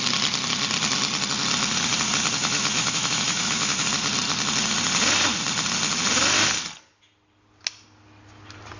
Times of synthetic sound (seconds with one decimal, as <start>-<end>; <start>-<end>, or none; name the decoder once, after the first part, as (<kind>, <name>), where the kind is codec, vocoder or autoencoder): 2.4-3.8 (autoencoder, DAC-VAE)